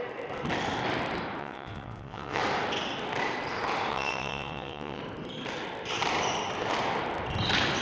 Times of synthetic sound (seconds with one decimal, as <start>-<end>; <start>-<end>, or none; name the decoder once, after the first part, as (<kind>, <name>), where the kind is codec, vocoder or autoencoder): 1.4-2.4 (vocoder, WaveNeXt); 3.9-5.0